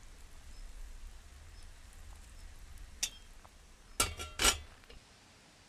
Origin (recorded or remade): recorded